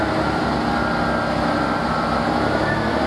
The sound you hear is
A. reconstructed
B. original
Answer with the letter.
B